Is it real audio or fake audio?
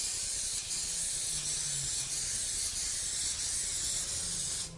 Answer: real